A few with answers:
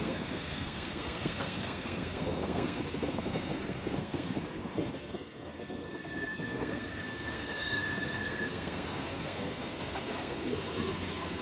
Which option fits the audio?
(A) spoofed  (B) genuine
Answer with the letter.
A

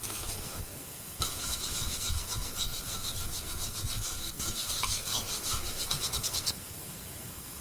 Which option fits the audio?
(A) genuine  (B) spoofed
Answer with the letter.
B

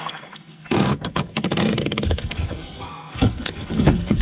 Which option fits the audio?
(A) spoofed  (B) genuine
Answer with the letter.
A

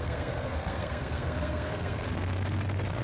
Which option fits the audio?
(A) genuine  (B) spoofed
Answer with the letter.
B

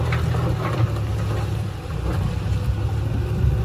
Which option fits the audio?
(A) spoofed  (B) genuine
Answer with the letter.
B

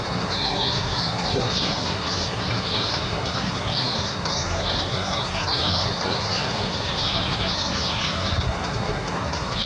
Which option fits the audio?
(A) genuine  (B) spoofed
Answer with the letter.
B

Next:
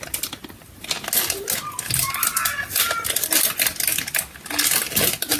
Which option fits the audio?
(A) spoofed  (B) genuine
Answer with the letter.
B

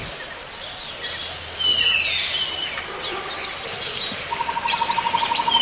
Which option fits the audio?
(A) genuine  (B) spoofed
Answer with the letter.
A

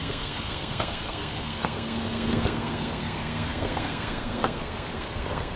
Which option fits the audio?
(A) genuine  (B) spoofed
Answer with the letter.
B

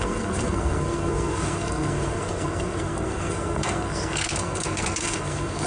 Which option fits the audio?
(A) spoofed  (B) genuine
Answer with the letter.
A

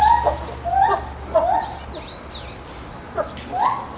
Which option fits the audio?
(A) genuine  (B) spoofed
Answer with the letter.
A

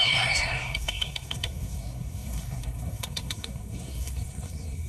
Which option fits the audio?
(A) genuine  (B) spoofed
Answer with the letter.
B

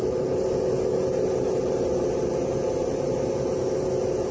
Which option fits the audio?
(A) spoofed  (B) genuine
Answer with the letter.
B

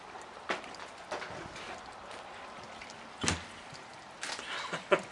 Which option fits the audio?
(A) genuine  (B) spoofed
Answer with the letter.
A